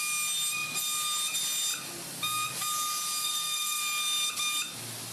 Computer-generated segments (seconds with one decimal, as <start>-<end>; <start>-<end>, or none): 3.2-3.8